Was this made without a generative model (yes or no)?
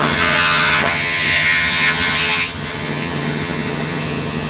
no